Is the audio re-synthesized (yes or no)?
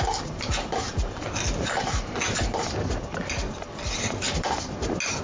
no